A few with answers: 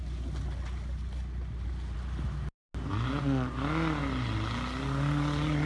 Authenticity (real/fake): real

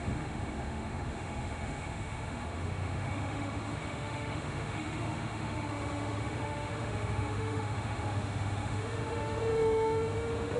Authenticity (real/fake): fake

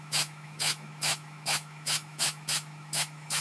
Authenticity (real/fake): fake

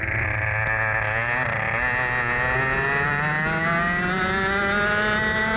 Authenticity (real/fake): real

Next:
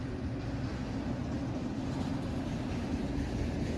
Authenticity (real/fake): real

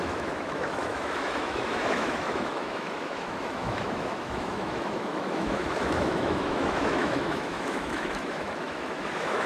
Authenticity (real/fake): fake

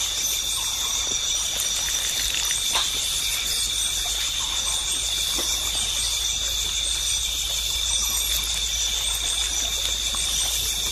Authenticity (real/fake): real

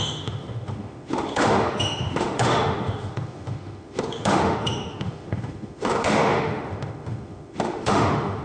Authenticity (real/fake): fake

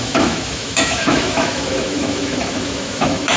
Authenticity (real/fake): fake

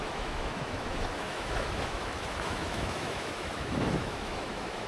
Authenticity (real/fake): fake